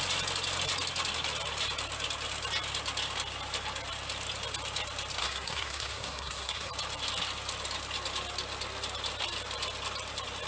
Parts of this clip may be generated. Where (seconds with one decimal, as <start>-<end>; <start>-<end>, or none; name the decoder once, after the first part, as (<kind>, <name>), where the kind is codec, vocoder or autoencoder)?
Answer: 5.2-6.7 (codec, SNAC)